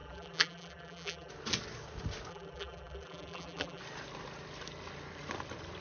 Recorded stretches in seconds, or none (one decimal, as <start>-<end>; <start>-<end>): 1.3-2.3; 3.8-5.8